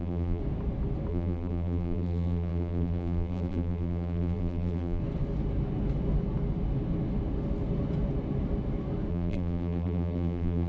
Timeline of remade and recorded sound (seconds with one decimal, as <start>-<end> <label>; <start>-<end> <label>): 0.0-0.4 remade; 0.4-1.1 recorded; 1.1-5.0 remade; 5.0-9.1 recorded; 9.1-10.7 remade